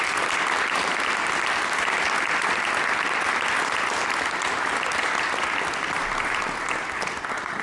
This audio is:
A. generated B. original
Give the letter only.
B